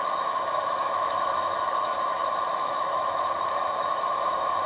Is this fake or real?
fake